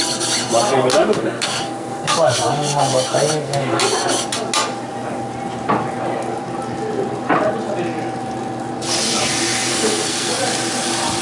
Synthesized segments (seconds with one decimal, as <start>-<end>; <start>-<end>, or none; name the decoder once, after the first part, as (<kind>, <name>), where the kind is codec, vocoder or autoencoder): 0.9-3.8 (codec, SNAC); 9.7-10.4